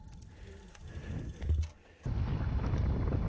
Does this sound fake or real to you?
real